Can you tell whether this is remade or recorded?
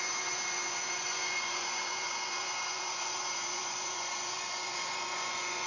remade